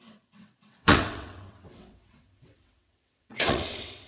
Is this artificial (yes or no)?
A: yes